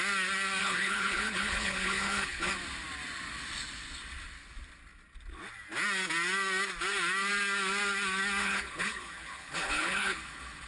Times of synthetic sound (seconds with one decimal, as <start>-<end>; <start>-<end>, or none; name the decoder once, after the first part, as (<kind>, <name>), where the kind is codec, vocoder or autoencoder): 0.6-2.5 (codec, HILCodec); 8.4-10.7